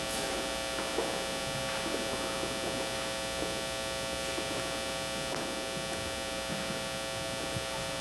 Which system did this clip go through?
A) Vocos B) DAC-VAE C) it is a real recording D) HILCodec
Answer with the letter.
C